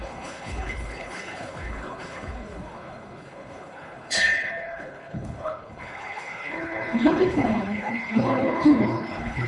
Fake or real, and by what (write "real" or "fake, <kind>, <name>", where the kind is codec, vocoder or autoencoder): fake, codec, HILCodec